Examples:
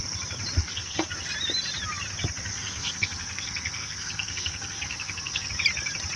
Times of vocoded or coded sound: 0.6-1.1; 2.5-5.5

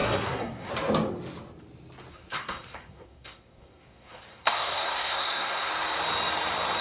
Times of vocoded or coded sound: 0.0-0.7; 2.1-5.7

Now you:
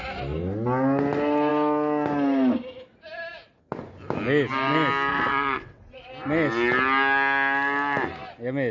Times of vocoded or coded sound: 5.1-6.1

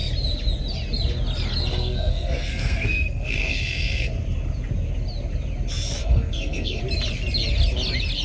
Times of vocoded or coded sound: 1.7-4.1; 6.0-6.8

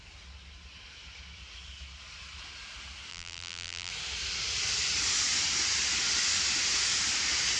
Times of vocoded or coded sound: 3.1-3.9

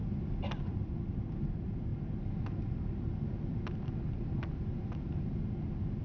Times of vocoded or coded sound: none

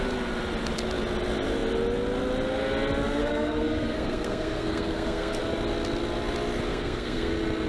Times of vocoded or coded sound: 3.2-5.4; 6.7-7.3

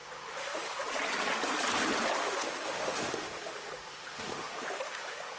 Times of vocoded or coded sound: 0.0-0.8; 2.2-5.4